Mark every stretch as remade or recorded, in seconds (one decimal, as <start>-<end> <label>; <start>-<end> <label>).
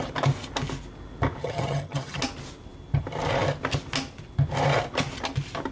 0.0-1.4 recorded; 1.4-2.2 remade; 2.2-5.7 recorded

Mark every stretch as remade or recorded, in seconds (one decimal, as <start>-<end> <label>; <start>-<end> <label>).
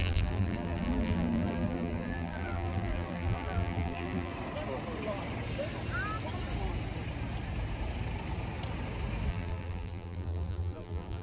0.0-4.3 remade; 4.3-9.3 recorded; 9.3-11.2 remade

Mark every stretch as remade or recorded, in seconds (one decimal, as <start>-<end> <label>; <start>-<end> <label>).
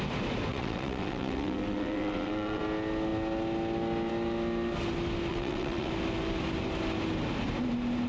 0.0-0.5 recorded; 0.5-2.6 remade; 2.6-5.3 recorded; 5.3-5.9 remade; 5.9-8.1 recorded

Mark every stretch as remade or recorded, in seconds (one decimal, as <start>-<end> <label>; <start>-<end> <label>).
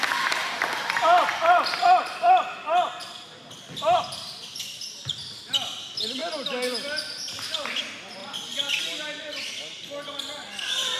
0.0-11.0 recorded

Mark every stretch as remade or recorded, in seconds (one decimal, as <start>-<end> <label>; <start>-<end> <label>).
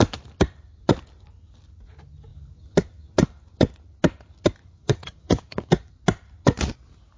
0.0-4.6 recorded; 4.6-5.9 remade; 5.9-7.2 recorded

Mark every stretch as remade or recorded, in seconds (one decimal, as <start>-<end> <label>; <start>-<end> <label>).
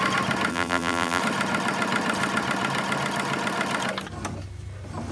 0.0-0.5 recorded; 0.5-1.2 remade; 1.2-5.1 recorded